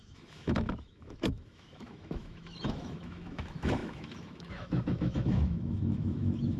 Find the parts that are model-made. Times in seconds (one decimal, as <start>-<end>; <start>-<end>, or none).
0.0-6.6